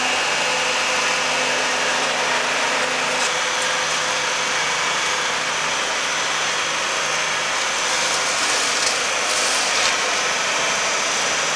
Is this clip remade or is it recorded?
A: recorded